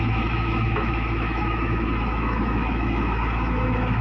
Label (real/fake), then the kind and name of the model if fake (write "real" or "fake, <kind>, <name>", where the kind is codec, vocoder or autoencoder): fake, autoencoder, DAC-VAE